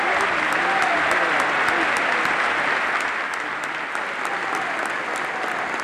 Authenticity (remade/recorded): recorded